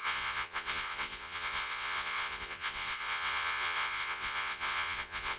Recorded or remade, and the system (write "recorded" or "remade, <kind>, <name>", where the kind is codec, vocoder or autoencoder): remade, vocoder, Vocos